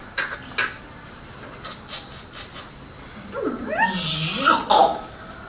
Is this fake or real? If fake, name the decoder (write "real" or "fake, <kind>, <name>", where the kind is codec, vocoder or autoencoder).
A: real